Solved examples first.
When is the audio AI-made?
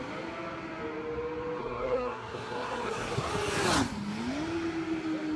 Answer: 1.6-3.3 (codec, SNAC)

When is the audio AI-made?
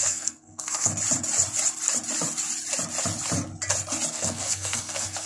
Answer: 0.0-0.9 (codec, SNAC); 4.1-5.3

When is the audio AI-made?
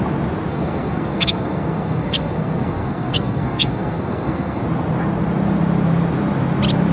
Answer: 0.5-4.6 (codec, SNAC)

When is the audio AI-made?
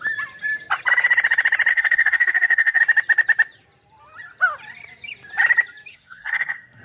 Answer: 1.7-2.8 (codec, SNAC); 5.9-6.8